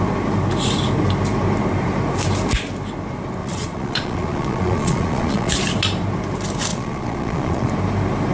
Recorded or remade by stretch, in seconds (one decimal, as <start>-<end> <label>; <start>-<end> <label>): 0.0-3.4 recorded; 3.4-5.5 remade; 5.5-6.7 recorded; 6.7-7.7 remade; 7.7-8.3 recorded